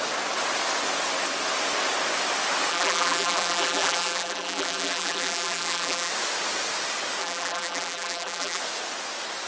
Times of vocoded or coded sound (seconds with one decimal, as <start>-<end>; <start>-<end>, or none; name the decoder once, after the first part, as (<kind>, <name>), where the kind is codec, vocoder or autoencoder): 2.7-6.1 (vocoder, BigVGAN v2); 7.2-8.6